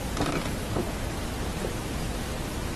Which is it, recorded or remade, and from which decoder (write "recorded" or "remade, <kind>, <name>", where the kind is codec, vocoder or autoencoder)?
recorded